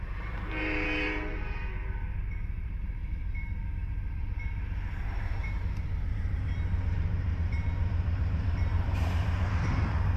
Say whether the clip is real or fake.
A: fake